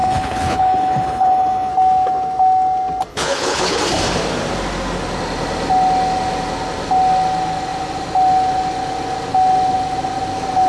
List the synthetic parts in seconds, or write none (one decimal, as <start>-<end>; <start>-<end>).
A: 0.0-1.7; 3.1-3.8